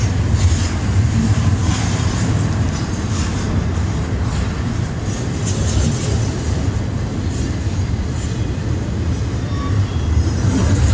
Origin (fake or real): real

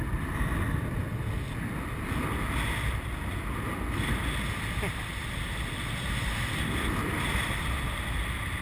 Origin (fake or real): real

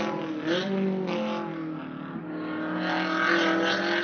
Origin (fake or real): real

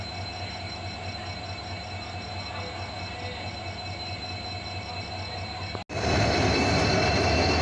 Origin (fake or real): real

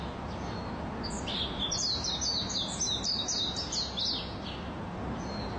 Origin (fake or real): real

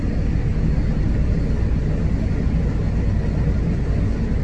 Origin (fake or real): real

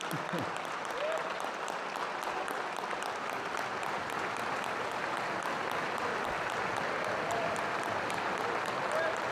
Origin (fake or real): real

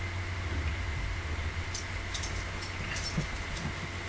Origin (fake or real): real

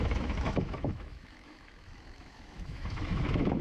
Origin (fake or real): fake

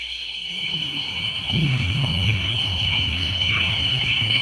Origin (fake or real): fake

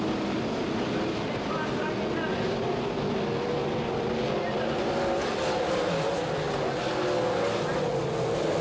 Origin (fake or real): real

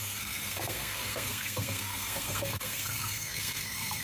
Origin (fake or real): fake